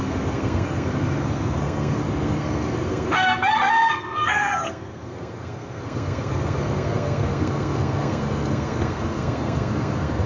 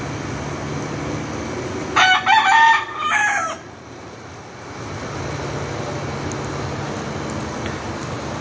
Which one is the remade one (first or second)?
first